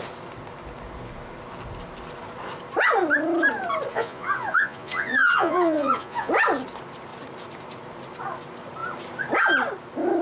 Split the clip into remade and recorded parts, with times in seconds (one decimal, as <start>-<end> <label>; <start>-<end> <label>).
0.0-3.9 recorded; 3.9-6.3 remade; 6.3-10.2 recorded

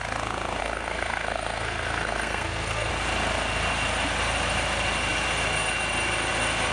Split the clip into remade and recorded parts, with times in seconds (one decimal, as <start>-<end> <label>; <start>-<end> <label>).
0.0-0.6 recorded; 0.6-2.9 remade; 2.9-6.7 recorded

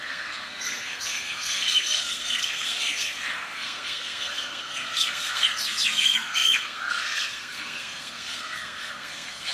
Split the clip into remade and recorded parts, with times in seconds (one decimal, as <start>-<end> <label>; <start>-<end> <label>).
0.0-9.5 remade